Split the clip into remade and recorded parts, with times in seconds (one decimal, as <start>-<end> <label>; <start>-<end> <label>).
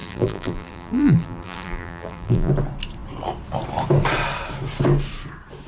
0.0-2.5 remade; 2.5-5.7 recorded